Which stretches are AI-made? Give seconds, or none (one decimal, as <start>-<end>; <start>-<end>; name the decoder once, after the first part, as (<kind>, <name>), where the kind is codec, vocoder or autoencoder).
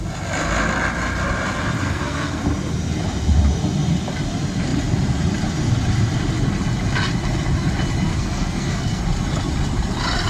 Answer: 1.8-2.4 (codec, SNAC); 8.1-9.0